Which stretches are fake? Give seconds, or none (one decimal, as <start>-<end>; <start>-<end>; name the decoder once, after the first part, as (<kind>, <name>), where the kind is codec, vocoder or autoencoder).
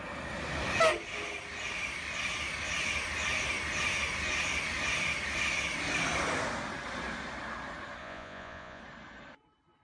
8.0-8.8 (vocoder, Vocos)